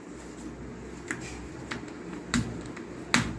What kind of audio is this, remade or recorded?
recorded